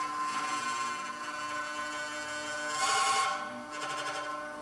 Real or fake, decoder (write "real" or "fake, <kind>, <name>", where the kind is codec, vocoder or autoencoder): real